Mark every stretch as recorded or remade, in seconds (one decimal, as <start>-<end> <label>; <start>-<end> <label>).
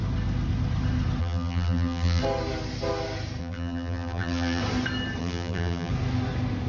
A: 0.0-1.2 recorded; 1.2-2.2 remade; 2.2-3.4 recorded; 3.4-4.6 remade; 4.6-5.2 recorded; 5.2-5.9 remade; 5.9-6.7 recorded